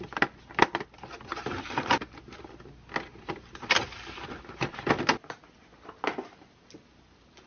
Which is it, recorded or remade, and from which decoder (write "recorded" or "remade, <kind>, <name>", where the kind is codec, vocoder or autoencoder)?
recorded